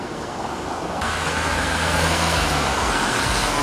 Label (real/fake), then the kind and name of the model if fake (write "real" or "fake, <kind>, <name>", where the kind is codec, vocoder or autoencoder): fake, codec, SNAC